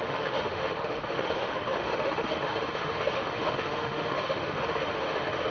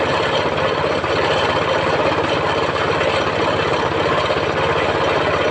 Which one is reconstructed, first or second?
first